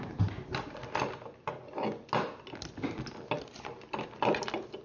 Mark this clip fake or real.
real